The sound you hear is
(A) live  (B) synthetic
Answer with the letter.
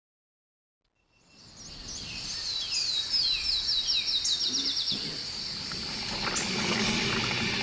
A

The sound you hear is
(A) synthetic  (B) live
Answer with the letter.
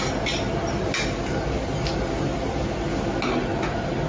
B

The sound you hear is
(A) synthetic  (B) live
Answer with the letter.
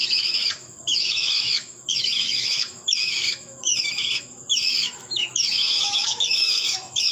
A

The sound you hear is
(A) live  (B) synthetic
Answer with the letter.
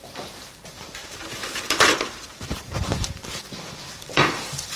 B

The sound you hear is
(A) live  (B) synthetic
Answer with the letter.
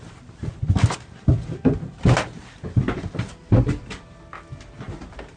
A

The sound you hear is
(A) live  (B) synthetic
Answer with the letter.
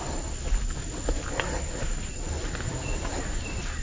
A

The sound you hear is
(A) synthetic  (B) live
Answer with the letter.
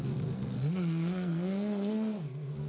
A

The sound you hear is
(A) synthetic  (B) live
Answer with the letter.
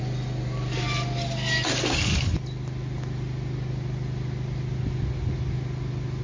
B